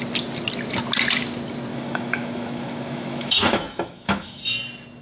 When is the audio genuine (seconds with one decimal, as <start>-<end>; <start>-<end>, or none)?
0.0-1.7; 4.4-5.0